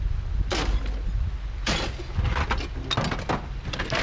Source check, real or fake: real